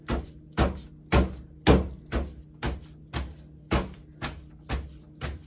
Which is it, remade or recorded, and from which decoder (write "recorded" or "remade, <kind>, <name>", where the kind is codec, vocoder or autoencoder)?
recorded